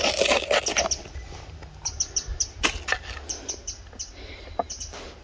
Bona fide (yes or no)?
yes